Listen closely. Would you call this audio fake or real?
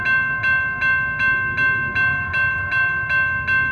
real